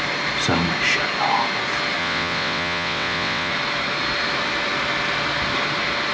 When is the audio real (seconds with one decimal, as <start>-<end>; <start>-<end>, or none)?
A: 0.0-2.0; 3.5-6.1